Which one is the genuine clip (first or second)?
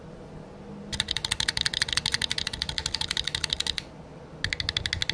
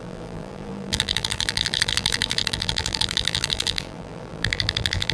first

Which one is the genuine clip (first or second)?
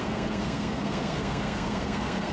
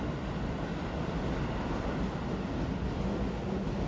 second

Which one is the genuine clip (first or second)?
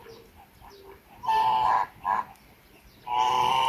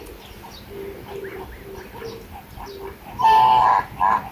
second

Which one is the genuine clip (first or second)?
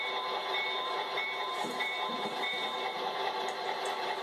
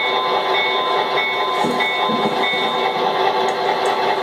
second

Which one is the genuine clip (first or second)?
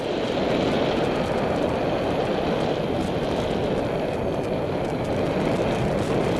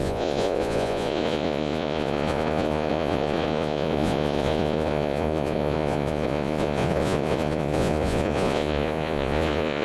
first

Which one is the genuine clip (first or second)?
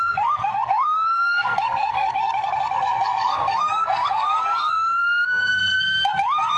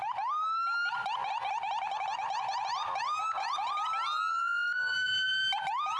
second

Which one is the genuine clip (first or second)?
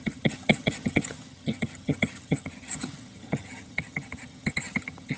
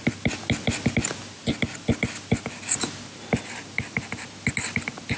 second